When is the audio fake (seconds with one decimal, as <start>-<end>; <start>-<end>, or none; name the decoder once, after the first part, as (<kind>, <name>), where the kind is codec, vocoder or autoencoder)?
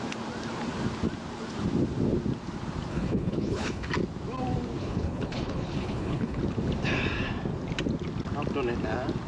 2.9-3.9 (codec, HILCodec); 4.8-6.4